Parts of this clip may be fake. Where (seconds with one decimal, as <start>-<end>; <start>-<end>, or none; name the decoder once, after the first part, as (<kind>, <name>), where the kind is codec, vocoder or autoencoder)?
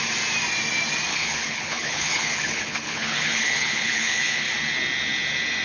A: 1.1-4.5 (codec, HILCodec)